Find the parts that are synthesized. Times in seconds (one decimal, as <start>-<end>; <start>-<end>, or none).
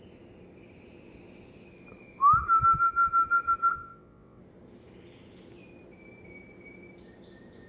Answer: 3.7-4.4